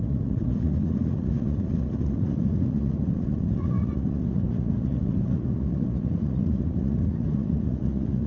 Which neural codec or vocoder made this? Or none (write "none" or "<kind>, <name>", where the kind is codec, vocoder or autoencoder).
vocoder, Vocos